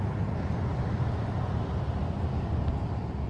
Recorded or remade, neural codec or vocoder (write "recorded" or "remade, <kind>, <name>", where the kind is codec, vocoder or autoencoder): recorded